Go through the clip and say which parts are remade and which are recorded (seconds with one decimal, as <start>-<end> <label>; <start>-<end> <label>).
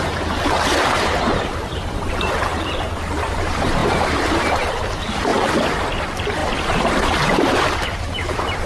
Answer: 0.0-5.3 remade; 5.3-6.0 recorded; 6.0-8.7 remade